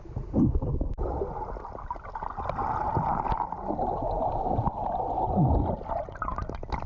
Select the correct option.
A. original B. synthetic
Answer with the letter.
A